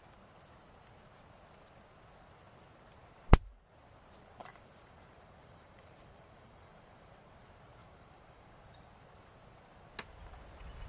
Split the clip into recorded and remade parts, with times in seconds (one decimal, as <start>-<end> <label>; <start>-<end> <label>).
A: 0.0-4.4 recorded; 4.4-7.3 remade; 7.3-7.8 recorded; 7.8-8.5 remade; 8.5-10.9 recorded